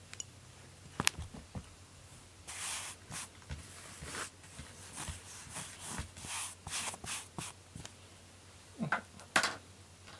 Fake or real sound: real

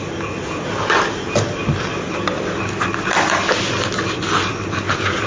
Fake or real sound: real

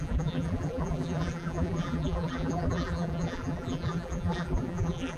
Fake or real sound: fake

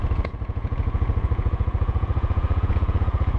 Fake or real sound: fake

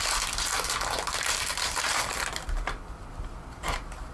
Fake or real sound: real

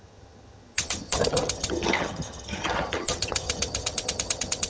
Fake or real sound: fake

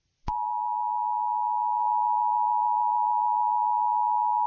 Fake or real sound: real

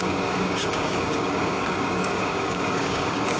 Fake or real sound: fake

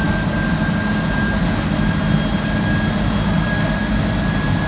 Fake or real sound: real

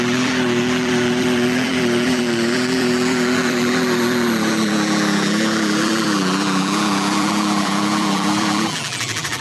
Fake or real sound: fake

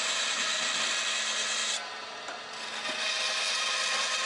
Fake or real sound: real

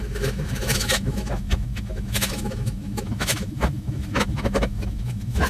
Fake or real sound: fake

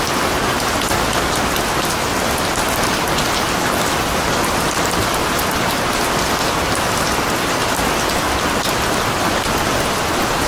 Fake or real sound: real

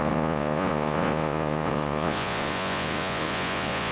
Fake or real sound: fake